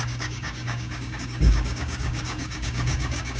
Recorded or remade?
remade